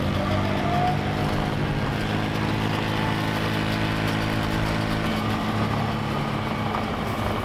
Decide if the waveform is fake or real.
real